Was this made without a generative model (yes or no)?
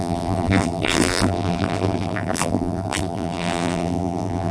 no